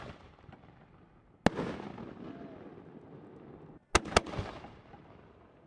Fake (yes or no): no